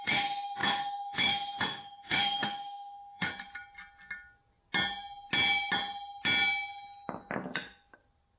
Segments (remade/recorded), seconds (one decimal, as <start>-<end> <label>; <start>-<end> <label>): 0.0-3.3 remade; 3.3-8.4 recorded